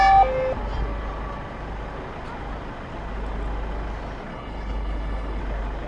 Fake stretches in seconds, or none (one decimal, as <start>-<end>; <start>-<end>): 4.3-5.4